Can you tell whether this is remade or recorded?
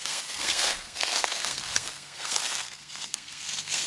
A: remade